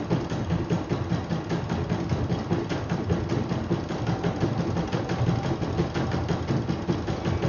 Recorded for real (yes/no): yes